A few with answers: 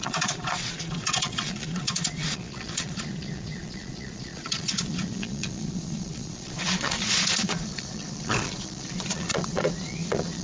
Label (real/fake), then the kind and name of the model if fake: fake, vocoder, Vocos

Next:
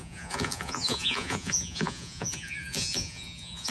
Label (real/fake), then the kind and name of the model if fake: fake, vocoder, Vocos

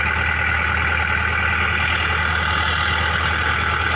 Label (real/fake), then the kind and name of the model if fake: real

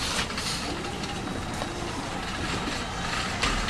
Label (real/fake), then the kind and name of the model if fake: real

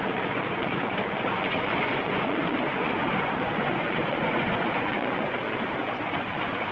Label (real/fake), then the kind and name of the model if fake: fake, vocoder, Vocos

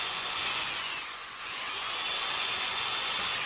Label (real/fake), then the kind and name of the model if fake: fake, vocoder, Vocos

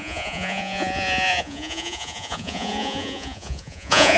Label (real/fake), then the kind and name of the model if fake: fake, vocoder, Vocos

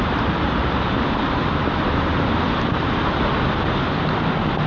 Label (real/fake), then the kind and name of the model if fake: real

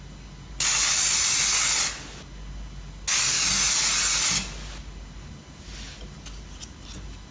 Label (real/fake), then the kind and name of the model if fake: real